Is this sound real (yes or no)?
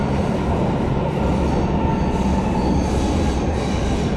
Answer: yes